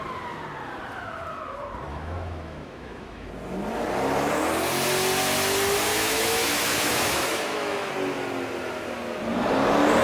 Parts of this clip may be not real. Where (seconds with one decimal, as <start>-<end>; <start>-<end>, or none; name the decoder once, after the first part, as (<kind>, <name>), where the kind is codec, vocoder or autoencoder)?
1.9-3.3 (autoencoder, DAC-VAE); 5.9-7.9